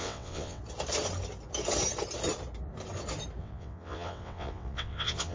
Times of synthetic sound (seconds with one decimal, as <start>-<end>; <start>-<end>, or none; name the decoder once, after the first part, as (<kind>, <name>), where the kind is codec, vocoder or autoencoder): 0.0-0.6 (vocoder, WaveNeXt); 3.4-5.3